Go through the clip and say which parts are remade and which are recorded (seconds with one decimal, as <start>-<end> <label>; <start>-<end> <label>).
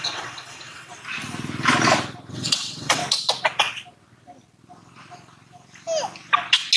0.0-0.9 remade; 0.9-2.3 recorded; 2.3-3.0 remade; 3.0-6.8 recorded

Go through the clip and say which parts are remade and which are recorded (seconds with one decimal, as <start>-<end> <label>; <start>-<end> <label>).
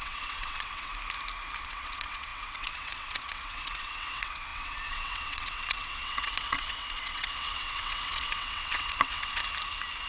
0.0-0.9 remade; 0.9-1.6 recorded; 1.6-9.4 remade; 9.4-10.1 recorded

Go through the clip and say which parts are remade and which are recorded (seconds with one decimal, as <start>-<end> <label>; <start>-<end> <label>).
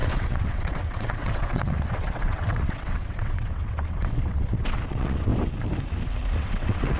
0.0-5.3 remade; 5.3-6.4 recorded; 6.4-7.0 remade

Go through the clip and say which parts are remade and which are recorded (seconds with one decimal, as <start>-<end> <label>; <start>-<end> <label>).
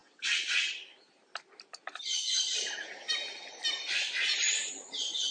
0.0-0.5 remade; 0.5-5.3 recorded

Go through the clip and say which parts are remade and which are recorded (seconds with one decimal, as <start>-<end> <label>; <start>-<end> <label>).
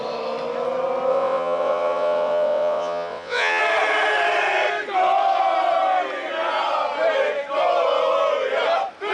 0.0-1.1 recorded; 1.1-3.6 remade; 3.6-9.1 recorded